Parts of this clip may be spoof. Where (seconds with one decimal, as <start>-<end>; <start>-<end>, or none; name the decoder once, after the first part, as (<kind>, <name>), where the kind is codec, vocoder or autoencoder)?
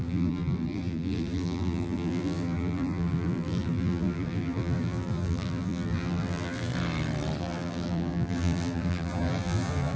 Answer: 0.0-6.7 (vocoder, BigVGAN v2); 7.4-10.0